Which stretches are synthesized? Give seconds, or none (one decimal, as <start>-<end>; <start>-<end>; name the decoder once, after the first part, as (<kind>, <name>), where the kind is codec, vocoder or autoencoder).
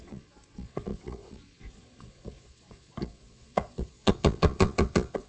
0.0-5.3 (vocoder, Vocos)